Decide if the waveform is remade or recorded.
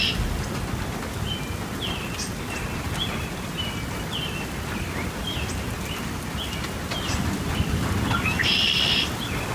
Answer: recorded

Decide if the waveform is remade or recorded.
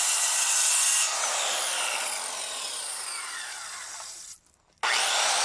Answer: recorded